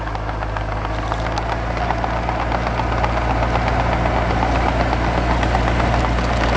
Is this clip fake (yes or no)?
no